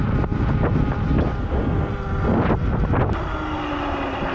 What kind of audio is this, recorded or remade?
recorded